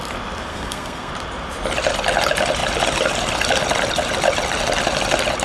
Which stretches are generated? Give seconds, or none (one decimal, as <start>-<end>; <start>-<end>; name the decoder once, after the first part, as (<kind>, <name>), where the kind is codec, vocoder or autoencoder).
0.5-1.1 (codec, SNAC)